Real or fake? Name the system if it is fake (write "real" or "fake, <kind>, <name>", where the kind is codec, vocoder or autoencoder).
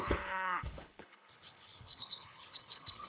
fake, codec, HILCodec